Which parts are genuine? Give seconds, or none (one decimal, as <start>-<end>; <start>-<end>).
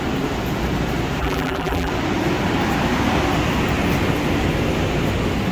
0.0-1.2; 1.9-5.5